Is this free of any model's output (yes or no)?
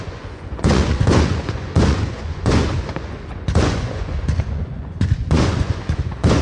no